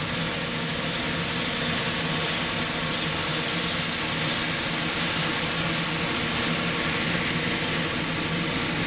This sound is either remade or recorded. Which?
recorded